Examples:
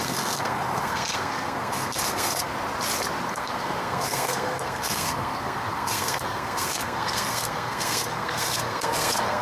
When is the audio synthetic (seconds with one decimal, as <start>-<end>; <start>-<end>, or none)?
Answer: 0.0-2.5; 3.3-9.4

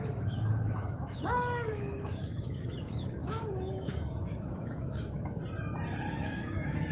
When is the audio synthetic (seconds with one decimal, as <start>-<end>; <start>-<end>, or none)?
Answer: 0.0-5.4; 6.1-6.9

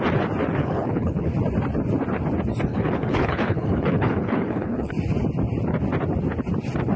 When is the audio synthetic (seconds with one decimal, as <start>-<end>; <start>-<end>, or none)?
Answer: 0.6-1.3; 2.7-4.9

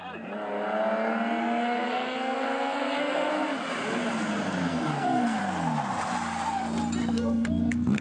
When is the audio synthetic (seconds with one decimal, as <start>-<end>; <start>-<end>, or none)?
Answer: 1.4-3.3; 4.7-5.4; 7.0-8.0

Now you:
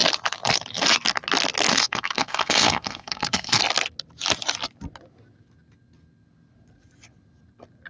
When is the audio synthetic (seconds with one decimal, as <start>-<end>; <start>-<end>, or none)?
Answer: 1.7-3.6